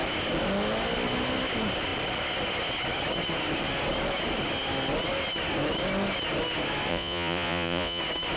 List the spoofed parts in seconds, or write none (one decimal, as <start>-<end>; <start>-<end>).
6.9-8.0